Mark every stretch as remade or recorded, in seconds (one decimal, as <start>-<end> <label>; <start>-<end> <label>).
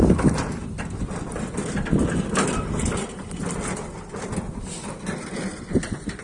0.0-6.2 recorded